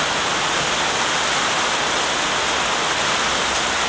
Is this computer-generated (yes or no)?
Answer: no